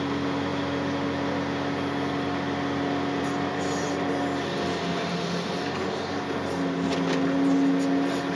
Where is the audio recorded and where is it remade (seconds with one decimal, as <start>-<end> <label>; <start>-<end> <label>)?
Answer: 0.0-8.4 recorded